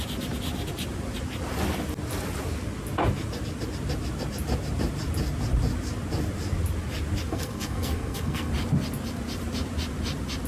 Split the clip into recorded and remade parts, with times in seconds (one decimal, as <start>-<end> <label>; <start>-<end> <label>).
0.0-7.3 recorded; 7.3-8.5 remade; 8.5-10.5 recorded